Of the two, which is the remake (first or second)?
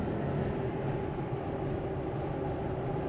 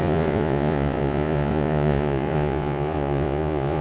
second